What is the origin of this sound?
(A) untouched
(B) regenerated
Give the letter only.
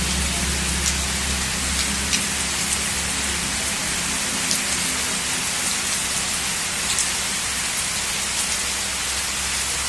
A